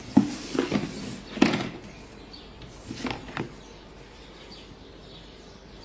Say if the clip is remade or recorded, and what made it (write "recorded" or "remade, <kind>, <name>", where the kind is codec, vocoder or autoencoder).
recorded